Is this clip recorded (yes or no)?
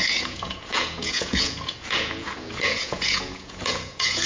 no